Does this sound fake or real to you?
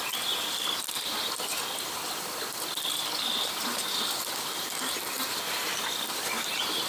real